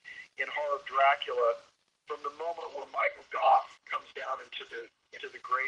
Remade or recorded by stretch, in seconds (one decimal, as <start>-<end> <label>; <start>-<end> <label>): 0.0-2.6 recorded; 2.6-5.2 remade; 5.2-5.7 recorded

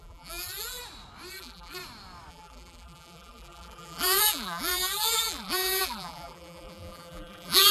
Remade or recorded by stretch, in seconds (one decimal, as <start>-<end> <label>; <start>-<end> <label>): 0.0-0.8 remade; 0.8-1.3 recorded; 1.3-1.8 remade; 1.8-2.3 recorded; 2.3-7.7 remade

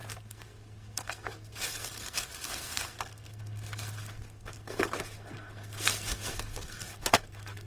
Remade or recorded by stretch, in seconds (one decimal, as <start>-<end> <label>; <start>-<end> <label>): 0.0-7.7 remade

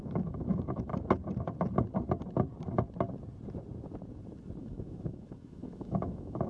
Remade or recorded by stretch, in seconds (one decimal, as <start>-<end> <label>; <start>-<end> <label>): 0.0-0.9 remade; 0.9-4.6 recorded; 4.6-6.5 remade

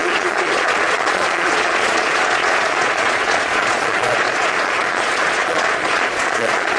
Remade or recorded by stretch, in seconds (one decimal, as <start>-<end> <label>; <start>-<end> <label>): 0.0-6.8 remade